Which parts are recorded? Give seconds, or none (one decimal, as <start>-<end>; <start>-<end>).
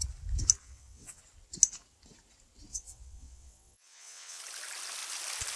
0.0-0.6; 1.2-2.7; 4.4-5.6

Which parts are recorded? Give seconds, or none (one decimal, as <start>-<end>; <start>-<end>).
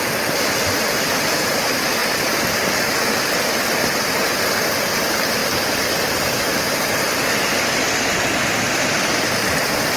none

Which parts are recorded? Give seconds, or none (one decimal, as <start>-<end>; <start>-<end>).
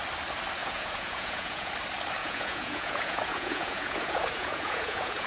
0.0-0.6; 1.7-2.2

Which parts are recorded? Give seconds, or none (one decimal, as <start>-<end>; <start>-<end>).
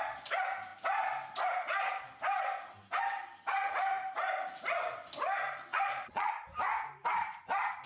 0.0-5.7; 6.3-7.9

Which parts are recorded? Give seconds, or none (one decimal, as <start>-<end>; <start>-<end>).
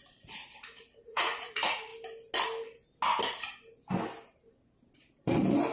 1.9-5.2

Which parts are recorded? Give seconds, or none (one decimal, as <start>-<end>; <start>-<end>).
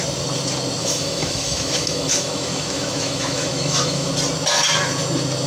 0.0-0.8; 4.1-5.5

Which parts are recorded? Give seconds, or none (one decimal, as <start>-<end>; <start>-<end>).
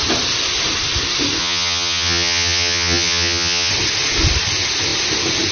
0.0-1.4; 3.7-5.5